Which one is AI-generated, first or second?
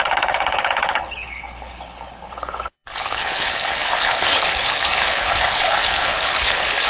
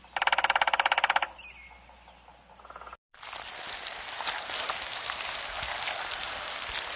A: first